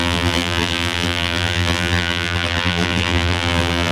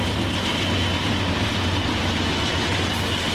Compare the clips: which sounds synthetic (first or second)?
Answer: first